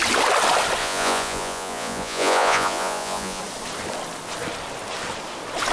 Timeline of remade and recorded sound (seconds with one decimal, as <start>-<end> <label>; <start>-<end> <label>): 0.0-0.8 recorded; 0.8-3.4 remade; 3.4-5.7 recorded